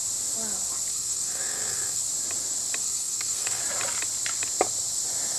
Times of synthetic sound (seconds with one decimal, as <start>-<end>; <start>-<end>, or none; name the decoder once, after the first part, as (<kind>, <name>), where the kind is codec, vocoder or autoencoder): 0.9-2.0 (codec, SNAC); 2.8-3.6